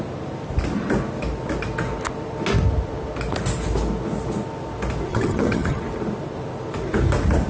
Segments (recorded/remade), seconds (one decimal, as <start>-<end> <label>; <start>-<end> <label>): 0.0-5.1 recorded; 5.1-5.8 remade; 5.8-7.5 recorded

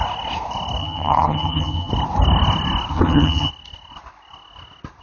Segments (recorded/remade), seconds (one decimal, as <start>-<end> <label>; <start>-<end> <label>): 0.0-0.8 recorded; 0.8-1.9 remade; 1.9-2.9 recorded; 2.9-3.5 remade; 3.5-5.0 recorded